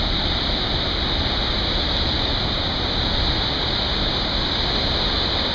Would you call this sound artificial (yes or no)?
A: no